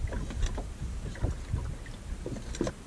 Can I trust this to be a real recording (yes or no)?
yes